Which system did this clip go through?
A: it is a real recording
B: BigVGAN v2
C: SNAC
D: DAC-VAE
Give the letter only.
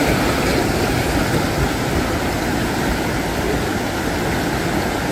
A